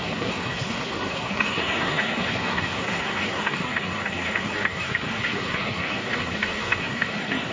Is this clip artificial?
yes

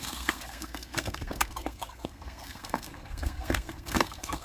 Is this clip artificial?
yes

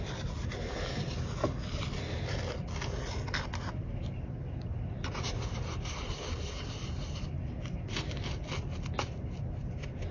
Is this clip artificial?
no